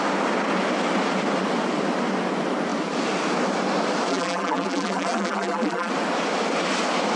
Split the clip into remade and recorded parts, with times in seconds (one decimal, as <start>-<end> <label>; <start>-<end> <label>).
0.0-4.1 recorded; 4.1-5.9 remade; 5.9-7.2 recorded